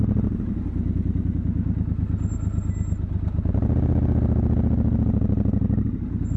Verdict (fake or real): real